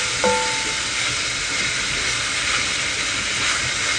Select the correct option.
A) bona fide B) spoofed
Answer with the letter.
A